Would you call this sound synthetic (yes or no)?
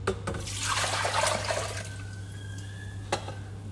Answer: no